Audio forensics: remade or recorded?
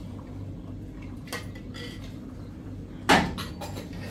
recorded